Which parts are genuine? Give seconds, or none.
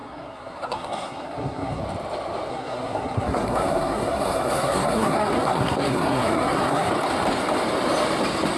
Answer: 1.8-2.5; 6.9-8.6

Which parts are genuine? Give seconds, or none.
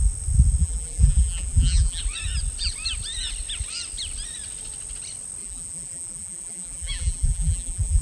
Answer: 0.0-0.6; 2.0-5.4